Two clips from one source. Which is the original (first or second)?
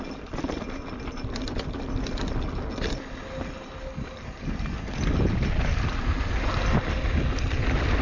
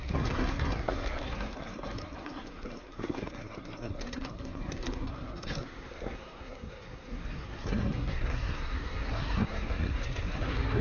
first